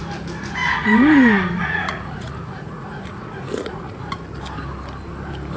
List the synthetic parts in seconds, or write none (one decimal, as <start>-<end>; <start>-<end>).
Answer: 0.6-4.0